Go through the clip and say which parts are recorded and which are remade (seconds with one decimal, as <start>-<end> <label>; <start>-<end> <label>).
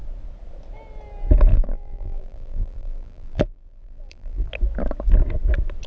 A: 0.0-1.5 recorded; 1.5-4.5 remade; 4.5-5.9 recorded